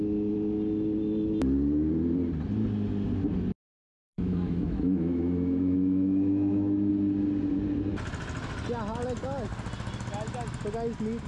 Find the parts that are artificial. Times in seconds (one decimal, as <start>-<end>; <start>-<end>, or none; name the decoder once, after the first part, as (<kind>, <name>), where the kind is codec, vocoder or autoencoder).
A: 4.0-6.9 (autoencoder, DAC-VAE)